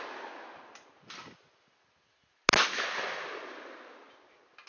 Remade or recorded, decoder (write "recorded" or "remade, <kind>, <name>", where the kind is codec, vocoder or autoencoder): recorded